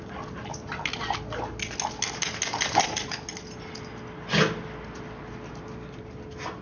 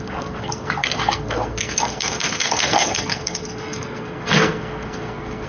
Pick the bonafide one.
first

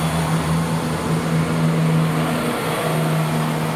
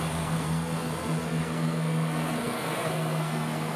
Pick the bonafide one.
first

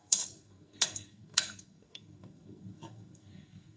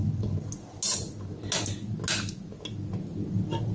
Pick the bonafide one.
second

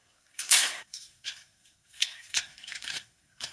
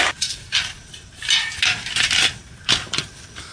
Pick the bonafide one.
second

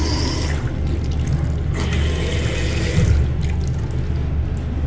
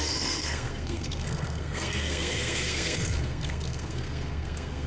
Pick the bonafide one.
first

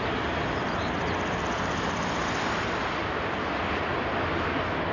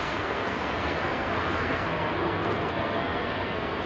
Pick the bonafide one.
first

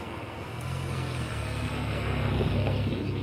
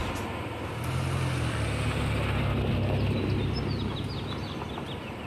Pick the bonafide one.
second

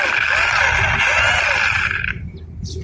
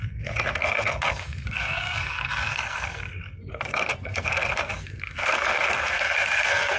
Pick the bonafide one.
first